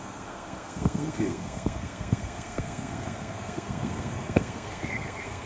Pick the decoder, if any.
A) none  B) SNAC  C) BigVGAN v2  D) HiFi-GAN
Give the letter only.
B